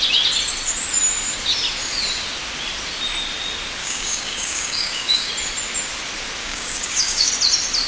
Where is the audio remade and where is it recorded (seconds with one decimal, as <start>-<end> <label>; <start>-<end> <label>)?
0.0-3.8 recorded; 3.8-5.3 remade; 5.3-6.4 recorded; 6.4-7.3 remade; 7.3-7.9 recorded